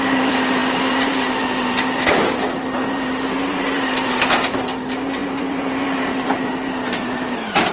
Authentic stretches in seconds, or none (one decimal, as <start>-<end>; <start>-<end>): none